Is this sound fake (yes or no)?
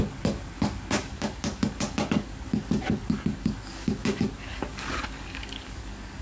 yes